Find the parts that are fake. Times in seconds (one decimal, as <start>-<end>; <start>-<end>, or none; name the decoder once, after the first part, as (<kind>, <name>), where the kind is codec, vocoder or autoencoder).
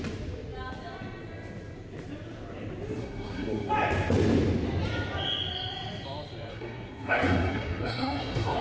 3.0-3.7 (codec, SNAC); 6.5-8.6